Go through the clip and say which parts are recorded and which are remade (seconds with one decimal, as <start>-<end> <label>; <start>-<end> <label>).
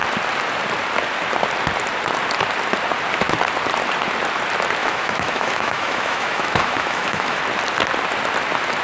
0.0-4.8 recorded; 4.8-7.4 remade; 7.4-8.8 recorded